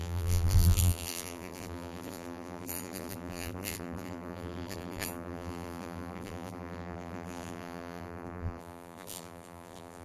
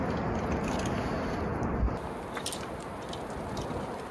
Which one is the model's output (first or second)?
first